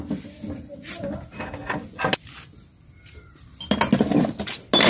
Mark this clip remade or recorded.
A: recorded